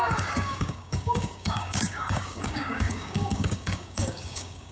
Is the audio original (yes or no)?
no